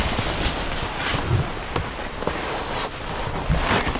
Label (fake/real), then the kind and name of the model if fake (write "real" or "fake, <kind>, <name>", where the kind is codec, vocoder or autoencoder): real